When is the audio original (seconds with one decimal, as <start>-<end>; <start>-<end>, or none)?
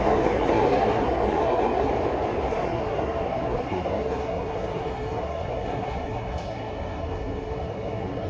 1.9-2.5